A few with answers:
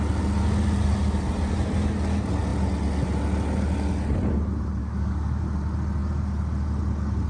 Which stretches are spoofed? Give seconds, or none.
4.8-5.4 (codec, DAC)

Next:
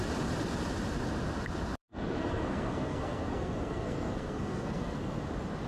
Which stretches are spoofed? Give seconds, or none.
1.8-5.2 (codec, SNAC)

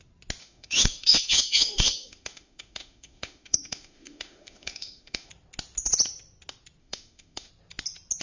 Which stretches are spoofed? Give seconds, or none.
0.4-5.3 (autoencoder, DAC-VAE); 6.8-7.5

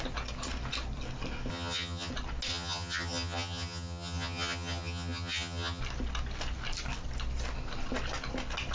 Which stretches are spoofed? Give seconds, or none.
1.5-2.1 (vocoder, HiFi-GAN); 2.5-5.8

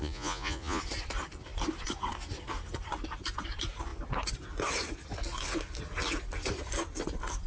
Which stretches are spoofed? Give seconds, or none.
0.0-0.8 (vocoder, Vocos)